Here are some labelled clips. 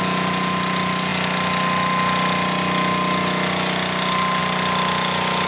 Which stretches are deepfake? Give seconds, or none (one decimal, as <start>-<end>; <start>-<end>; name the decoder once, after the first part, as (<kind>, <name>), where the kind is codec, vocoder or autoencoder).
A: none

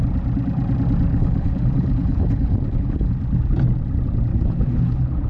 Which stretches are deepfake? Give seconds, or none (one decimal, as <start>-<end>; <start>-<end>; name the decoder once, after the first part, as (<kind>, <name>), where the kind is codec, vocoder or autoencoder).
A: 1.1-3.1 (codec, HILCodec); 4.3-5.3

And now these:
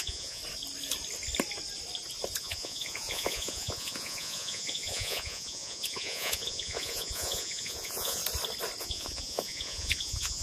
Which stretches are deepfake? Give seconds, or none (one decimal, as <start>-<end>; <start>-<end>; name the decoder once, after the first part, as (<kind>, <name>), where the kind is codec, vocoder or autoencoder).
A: 0.0-0.4 (vocoder, Vocos); 2.4-8.2; 8.8-10.4